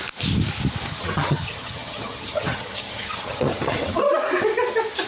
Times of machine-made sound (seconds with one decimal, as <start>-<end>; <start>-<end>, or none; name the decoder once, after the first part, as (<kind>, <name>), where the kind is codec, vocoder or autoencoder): 0.9-4.0 (vocoder, HiFi-GAN)